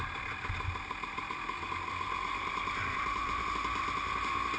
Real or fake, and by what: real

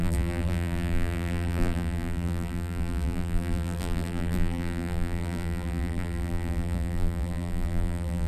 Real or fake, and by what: fake, vocoder, BigVGAN v2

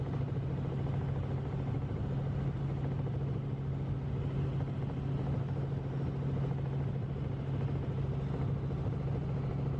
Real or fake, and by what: real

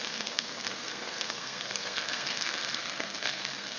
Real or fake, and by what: fake, codec, SNAC